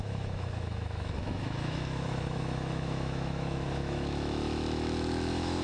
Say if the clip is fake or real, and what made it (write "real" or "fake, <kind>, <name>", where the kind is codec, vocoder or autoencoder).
fake, autoencoder, DAC-VAE